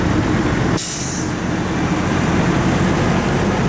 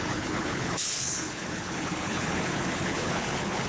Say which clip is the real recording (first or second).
first